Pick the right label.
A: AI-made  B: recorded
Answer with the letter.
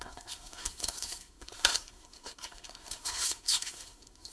A